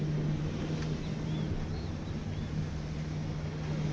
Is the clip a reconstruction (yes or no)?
no